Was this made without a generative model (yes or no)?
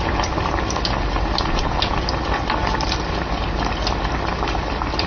yes